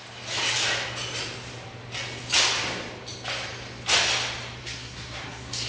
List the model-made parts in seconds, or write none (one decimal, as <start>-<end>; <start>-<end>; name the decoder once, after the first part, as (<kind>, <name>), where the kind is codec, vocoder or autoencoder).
4.6-5.7 (codec, SNAC)